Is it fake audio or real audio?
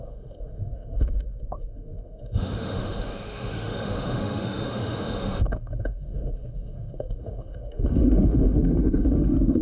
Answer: fake